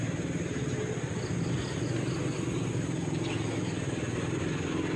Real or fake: real